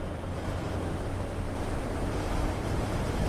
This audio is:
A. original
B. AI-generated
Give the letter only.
B